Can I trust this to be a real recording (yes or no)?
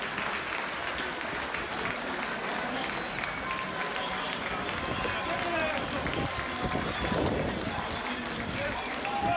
yes